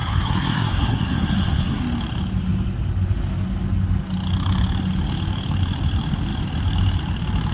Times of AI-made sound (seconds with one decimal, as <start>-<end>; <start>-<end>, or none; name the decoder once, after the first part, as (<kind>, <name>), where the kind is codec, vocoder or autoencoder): 0.0-1.8 (codec, SNAC)